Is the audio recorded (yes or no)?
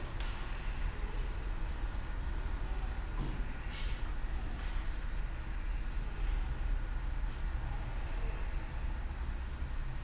yes